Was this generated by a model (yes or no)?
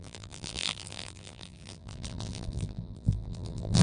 yes